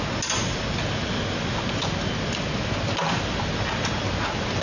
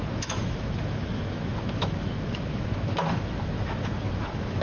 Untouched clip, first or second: first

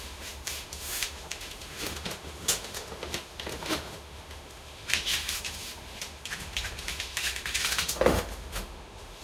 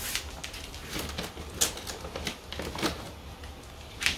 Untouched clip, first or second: second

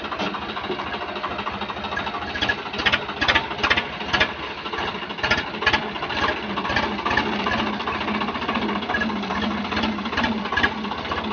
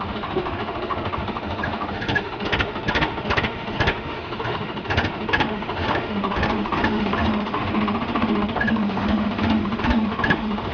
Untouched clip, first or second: first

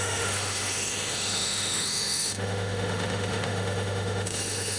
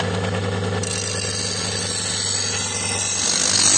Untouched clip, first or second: second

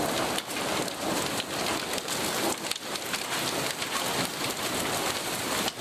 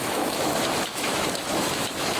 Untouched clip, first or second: first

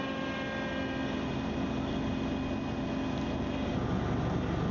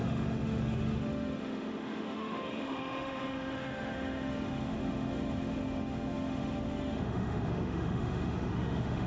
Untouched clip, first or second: first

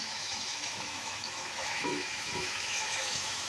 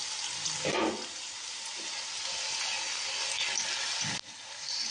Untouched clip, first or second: second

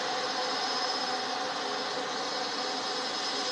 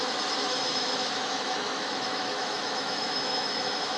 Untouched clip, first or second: first